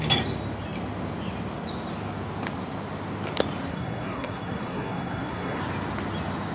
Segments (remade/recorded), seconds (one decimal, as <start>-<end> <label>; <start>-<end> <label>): 0.0-3.7 recorded; 3.7-5.6 remade; 5.6-6.5 recorded